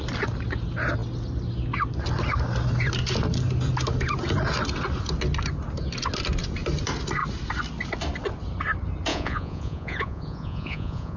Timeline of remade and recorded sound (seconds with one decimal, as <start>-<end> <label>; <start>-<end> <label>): 0.0-9.1 recorded; 9.1-11.2 remade